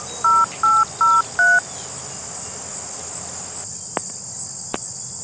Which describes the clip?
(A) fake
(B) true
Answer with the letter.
B